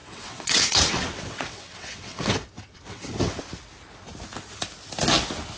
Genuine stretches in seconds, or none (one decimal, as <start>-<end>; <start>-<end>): 3.4-5.6